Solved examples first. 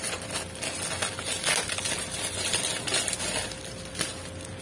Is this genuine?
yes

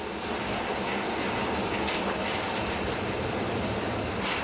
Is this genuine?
yes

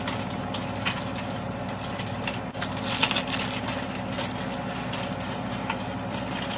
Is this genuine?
yes